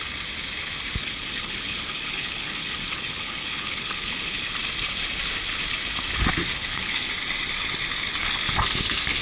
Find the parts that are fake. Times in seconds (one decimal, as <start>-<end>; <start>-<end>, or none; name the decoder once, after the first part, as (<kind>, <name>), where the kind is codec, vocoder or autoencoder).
1.0-4.5 (codec, HILCodec); 6.6-7.1